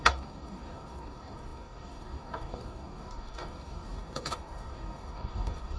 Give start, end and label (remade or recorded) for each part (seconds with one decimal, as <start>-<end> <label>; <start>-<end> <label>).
0.0-5.8 remade

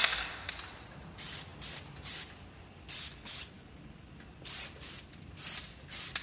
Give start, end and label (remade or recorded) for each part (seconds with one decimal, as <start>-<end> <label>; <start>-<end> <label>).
0.0-0.5 remade; 0.5-6.2 recorded

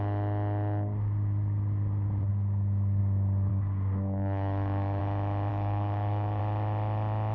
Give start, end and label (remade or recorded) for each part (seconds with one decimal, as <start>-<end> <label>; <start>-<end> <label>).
0.0-3.5 recorded; 3.5-5.0 remade; 5.0-5.5 recorded; 5.5-6.4 remade; 6.4-7.3 recorded

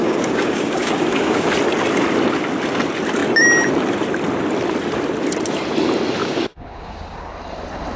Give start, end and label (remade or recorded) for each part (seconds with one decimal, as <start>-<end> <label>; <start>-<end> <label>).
0.0-1.5 remade; 1.5-6.2 recorded; 6.2-7.3 remade; 7.3-8.0 recorded